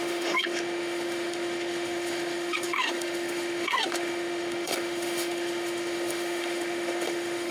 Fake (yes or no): yes